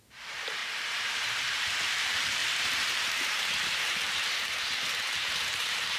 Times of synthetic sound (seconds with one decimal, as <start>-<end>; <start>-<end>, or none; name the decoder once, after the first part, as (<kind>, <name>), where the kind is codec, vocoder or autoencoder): 0.0-0.6 (vocoder, BigVGAN v2); 1.5-6.0